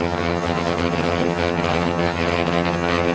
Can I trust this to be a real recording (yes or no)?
no